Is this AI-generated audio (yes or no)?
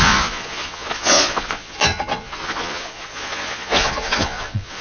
yes